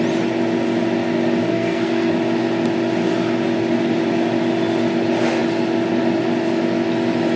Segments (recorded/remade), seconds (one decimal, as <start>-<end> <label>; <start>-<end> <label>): 0.0-1.5 recorded; 1.5-2.1 remade; 2.1-7.4 recorded